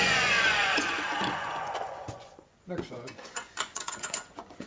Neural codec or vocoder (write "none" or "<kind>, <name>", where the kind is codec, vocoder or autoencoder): vocoder, Vocos